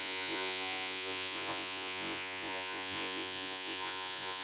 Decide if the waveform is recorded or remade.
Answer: remade